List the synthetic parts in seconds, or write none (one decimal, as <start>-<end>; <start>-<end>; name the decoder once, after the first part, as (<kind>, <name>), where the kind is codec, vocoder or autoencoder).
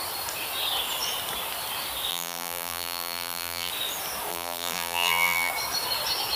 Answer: 2.1-3.7 (vocoder, BigVGAN v2); 4.3-5.5